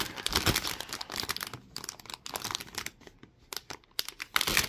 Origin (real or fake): real